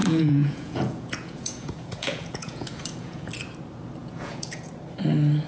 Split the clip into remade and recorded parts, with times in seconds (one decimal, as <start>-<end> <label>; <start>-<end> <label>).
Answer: 0.0-3.3 remade; 3.3-4.0 recorded; 4.0-4.7 remade; 4.7-5.5 recorded